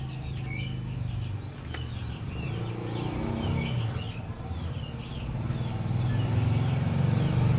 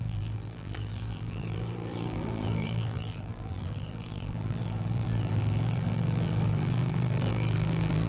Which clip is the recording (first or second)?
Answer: first